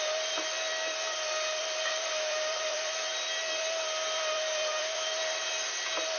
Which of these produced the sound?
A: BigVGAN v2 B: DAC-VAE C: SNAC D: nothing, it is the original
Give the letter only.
A